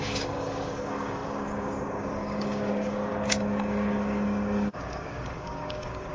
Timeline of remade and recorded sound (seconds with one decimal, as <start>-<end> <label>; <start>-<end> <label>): 0.0-6.1 remade